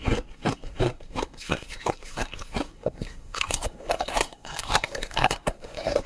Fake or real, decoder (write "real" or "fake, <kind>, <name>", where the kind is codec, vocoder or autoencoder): fake, codec, SNAC